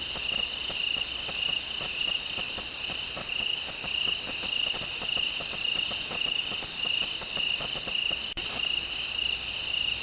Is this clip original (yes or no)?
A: yes